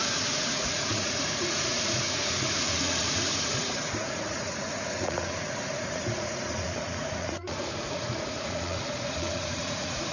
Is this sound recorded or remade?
remade